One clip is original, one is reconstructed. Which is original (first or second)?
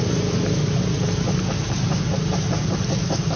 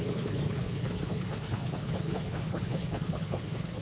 first